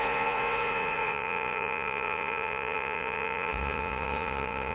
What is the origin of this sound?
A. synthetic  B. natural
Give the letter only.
A